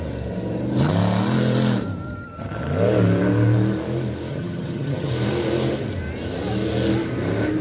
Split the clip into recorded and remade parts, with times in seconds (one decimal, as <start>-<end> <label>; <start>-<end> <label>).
0.0-4.3 recorded; 4.3-5.1 remade; 5.1-7.6 recorded